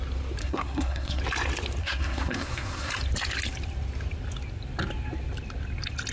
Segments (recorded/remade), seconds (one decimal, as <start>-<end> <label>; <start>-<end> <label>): 0.0-0.4 recorded; 0.4-1.2 remade; 1.2-1.8 recorded; 1.8-2.9 remade; 2.9-6.1 recorded